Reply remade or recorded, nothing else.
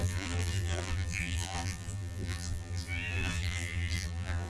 remade